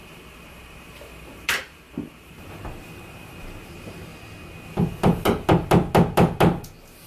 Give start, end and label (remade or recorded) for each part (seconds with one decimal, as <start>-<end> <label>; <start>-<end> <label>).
0.0-4.1 remade; 4.1-7.1 recorded

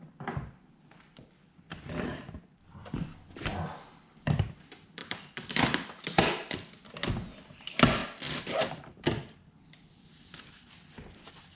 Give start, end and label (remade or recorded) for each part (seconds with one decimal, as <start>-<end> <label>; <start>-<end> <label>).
0.0-3.5 remade; 3.5-4.1 recorded; 4.1-11.6 remade

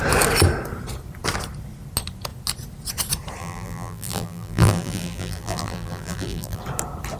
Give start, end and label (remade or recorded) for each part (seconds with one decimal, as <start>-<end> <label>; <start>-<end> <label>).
0.0-3.4 recorded; 3.4-6.6 remade; 6.6-7.2 recorded

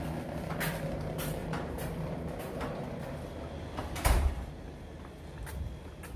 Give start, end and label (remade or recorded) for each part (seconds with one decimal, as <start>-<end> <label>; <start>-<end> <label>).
0.0-1.4 recorded; 1.4-1.9 remade; 1.9-3.8 recorded; 3.8-4.5 remade; 4.5-6.2 recorded